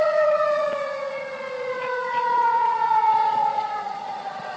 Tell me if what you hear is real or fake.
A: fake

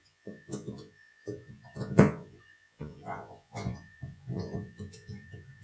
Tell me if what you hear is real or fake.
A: fake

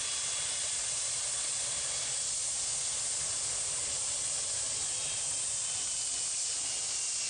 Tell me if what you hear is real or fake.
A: real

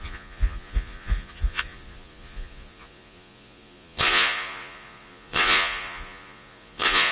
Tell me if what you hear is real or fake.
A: fake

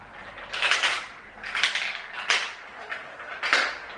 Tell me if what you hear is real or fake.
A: real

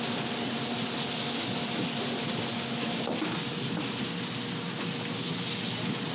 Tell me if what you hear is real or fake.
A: real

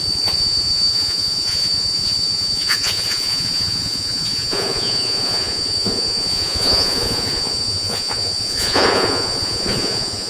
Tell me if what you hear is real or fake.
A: fake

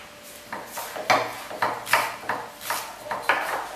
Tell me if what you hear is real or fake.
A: real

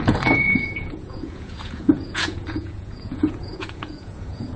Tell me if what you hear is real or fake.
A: fake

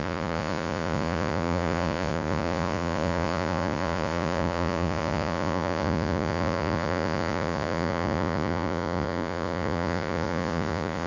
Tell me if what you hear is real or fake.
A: fake